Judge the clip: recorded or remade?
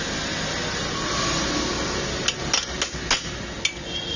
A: recorded